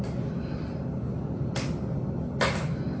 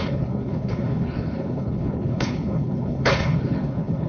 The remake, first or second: second